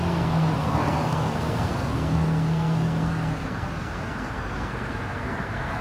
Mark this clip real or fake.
fake